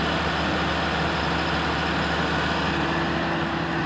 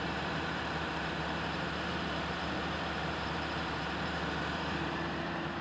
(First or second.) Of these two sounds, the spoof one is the second